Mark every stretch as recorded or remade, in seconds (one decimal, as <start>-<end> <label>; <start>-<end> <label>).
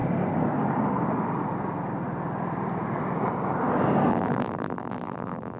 0.0-4.1 recorded; 4.1-5.6 remade